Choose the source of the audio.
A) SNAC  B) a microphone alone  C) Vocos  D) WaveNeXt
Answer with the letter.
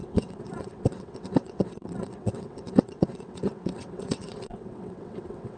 D